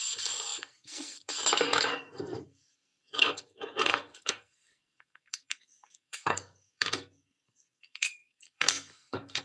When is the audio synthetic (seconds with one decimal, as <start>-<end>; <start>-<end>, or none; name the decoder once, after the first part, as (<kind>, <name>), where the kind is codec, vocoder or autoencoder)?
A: 0.0-9.4 (codec, SNAC)

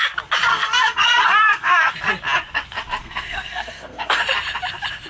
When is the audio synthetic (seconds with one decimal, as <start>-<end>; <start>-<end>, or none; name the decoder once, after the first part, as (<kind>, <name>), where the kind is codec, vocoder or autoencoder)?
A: 0.5-1.9 (codec, SNAC); 3.0-4.2